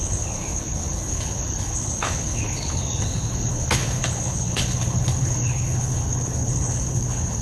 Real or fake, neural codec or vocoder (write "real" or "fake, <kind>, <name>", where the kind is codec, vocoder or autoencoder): fake, codec, HILCodec